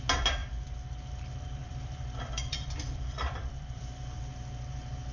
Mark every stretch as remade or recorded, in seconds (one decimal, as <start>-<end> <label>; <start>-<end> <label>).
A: 0.0-1.6 recorded; 1.6-3.8 remade; 3.8-5.1 recorded